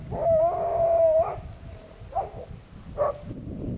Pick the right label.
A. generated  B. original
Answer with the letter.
B